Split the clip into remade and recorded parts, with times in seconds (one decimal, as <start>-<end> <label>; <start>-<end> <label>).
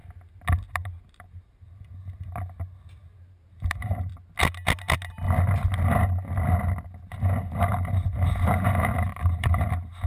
0.0-0.7 recorded; 0.7-2.0 remade; 2.0-3.4 recorded; 3.4-4.1 remade; 4.1-7.4 recorded; 7.4-10.1 remade